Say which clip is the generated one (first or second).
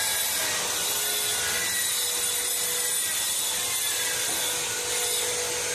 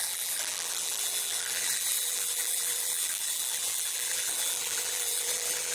second